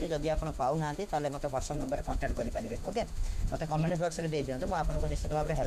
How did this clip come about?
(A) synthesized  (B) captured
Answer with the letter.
A